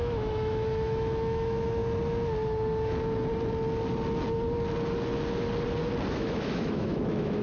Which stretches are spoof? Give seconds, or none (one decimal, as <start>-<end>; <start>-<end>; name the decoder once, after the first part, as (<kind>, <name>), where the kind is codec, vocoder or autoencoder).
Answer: 0.0-1.8 (autoencoder, DAC-VAE); 6.1-7.4